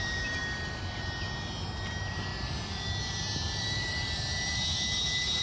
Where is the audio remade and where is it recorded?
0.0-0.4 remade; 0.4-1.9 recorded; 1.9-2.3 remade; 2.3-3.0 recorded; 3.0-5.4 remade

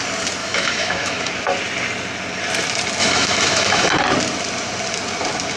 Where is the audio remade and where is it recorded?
0.0-0.4 recorded; 0.4-1.3 remade; 1.3-3.0 recorded; 3.0-3.9 remade; 3.9-5.6 recorded

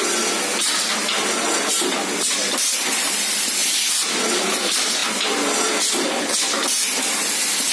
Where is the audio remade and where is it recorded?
0.0-7.7 recorded

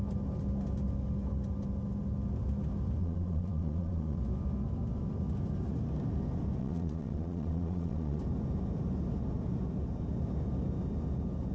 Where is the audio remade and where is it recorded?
0.0-3.0 recorded; 3.0-4.2 remade; 4.2-6.6 recorded; 6.6-8.2 remade; 8.2-11.5 recorded

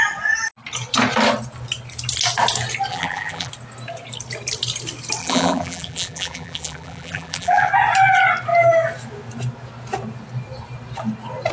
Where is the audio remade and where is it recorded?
0.0-2.9 recorded; 2.9-3.5 remade; 3.5-5.2 recorded; 5.2-7.7 remade; 7.7-11.5 recorded

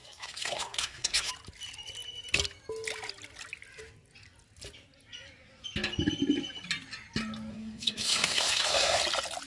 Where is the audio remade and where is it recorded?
0.0-1.3 remade; 1.3-7.5 recorded; 7.5-9.0 remade; 9.0-9.5 recorded